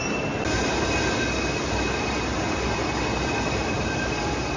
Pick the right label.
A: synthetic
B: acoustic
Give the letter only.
B